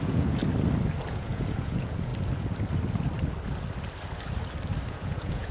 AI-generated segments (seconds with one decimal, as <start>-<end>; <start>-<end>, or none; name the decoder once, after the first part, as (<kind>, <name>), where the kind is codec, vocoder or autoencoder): 0.0-0.4 (vocoder, Vocos); 1.1-2.1; 4.9-5.5